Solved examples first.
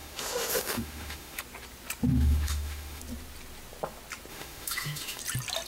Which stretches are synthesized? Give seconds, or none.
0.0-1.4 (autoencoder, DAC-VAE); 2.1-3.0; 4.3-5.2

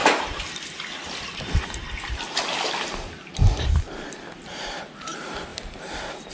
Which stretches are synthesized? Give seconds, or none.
0.0-0.7 (vocoder, BigVGAN v2)

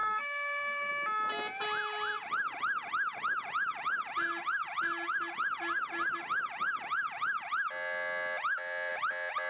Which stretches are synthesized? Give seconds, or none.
0.0-0.9 (codec, SNAC)